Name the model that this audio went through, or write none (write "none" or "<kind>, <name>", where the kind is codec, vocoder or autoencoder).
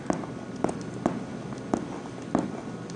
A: none